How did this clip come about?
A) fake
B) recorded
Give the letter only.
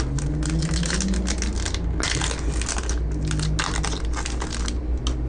B